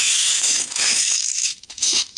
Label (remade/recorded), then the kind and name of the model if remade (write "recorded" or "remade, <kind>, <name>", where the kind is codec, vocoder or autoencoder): remade, autoencoder, DAC-VAE